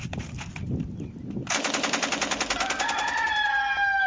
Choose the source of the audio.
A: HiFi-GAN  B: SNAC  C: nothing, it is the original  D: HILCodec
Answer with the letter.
C